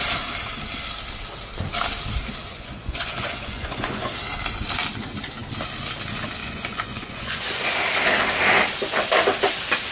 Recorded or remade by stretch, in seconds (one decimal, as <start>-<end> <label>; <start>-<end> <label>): 0.0-2.4 recorded; 2.4-4.1 remade; 4.1-6.4 recorded; 6.4-7.7 remade; 7.7-9.9 recorded